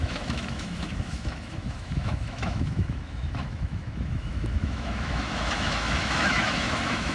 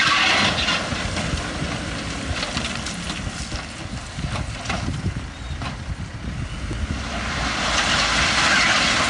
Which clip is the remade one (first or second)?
first